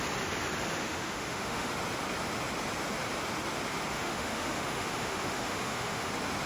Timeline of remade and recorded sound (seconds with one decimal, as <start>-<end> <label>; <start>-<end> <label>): 0.0-0.8 recorded; 0.8-1.7 remade; 1.7-3.9 recorded; 3.9-6.1 remade; 6.1-6.5 recorded